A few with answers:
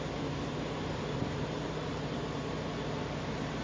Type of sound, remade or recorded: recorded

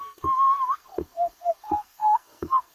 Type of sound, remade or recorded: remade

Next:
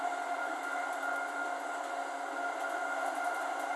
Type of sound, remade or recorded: recorded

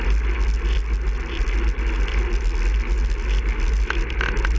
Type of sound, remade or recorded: recorded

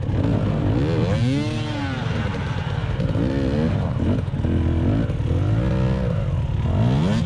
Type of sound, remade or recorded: recorded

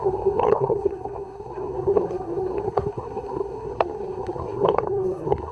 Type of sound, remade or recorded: remade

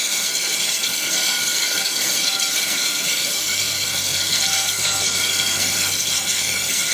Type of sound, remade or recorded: remade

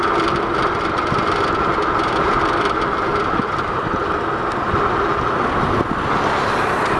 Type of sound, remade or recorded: recorded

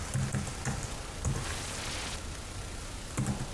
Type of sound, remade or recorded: recorded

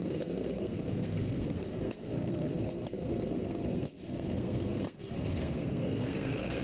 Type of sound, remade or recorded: remade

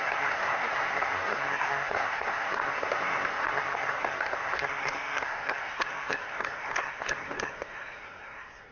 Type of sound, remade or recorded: remade